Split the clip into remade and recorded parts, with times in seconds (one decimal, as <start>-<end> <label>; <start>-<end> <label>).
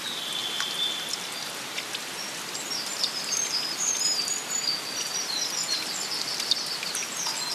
0.0-0.4 recorded; 0.4-0.9 remade; 0.9-2.9 recorded; 2.9-4.2 remade; 4.2-5.2 recorded; 5.2-7.5 remade